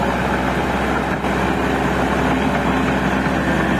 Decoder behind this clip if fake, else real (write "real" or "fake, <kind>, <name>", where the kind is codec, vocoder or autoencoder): real